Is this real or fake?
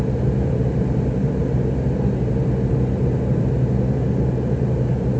real